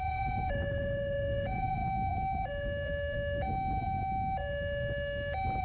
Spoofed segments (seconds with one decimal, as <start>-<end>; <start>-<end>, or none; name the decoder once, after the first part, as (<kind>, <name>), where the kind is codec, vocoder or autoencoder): 0.0-1.8 (vocoder, Vocos)